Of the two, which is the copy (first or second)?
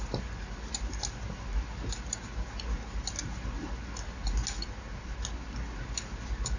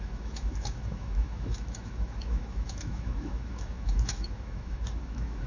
second